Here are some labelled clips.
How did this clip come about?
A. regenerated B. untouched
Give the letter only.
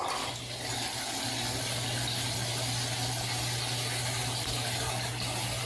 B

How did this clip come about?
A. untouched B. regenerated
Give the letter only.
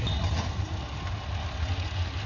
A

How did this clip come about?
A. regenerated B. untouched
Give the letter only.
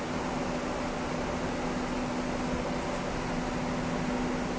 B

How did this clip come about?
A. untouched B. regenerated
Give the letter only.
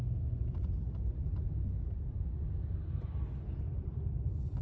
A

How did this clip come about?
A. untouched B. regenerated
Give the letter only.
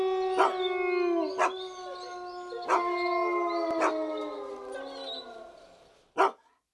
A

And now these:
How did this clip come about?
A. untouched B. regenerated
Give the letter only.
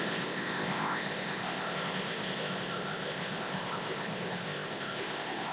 B